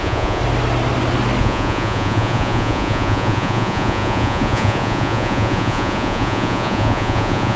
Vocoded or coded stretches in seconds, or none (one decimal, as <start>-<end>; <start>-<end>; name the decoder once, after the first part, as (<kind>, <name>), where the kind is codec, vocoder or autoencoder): 0.0-0.4 (vocoder, Vocos); 1.4-7.6